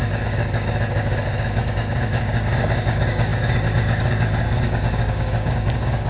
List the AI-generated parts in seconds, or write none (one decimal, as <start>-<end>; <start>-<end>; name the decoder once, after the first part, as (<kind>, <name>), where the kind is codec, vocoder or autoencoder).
0.0-6.1 (codec, DAC)